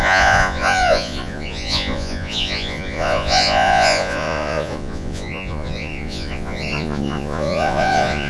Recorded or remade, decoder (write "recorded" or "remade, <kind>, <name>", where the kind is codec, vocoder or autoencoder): remade, vocoder, Vocos